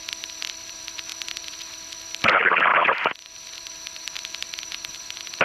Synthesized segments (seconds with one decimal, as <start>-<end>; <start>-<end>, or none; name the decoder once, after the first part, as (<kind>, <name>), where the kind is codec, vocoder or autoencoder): 0.0-5.4 (vocoder, BigVGAN v2)